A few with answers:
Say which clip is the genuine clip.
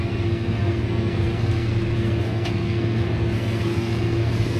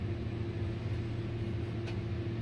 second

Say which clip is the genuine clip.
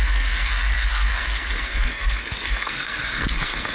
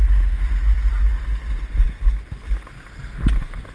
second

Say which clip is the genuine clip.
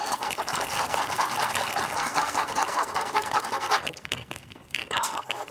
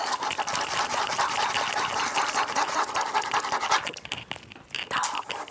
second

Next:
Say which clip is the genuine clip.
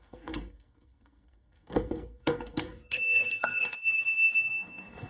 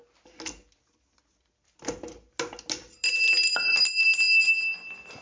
second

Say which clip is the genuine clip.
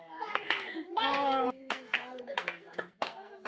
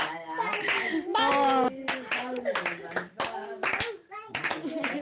second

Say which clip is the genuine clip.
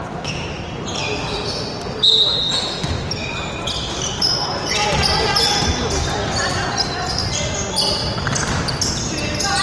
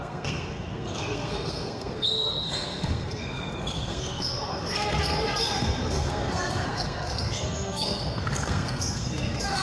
first